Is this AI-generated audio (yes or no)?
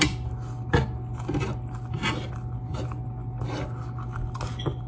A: no